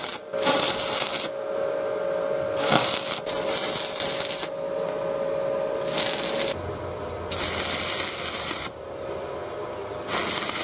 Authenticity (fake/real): real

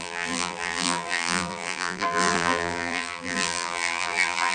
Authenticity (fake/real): fake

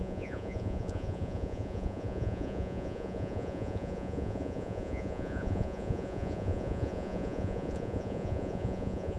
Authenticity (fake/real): fake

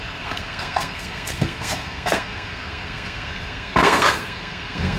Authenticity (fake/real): fake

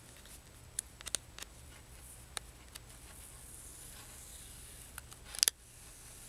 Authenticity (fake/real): real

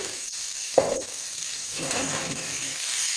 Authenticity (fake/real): fake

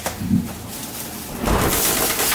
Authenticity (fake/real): real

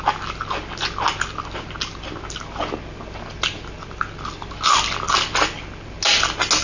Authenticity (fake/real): real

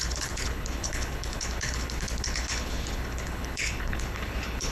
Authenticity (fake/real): fake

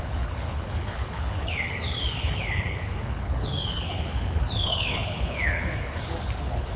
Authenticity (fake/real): fake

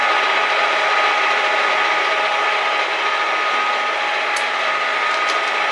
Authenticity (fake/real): real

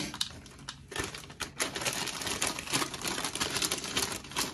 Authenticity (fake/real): real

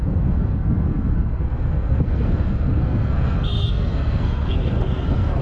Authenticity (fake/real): fake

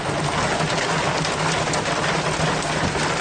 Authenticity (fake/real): real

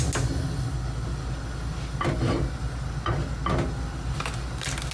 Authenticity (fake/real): real